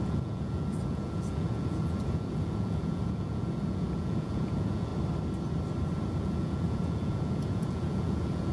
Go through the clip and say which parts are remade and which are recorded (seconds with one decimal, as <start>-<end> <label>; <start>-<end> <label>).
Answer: 0.0-4.9 remade; 4.9-6.2 recorded; 6.2-8.5 remade

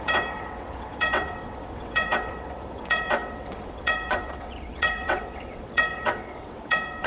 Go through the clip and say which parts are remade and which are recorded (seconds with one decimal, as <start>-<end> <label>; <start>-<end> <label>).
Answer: 0.0-7.1 remade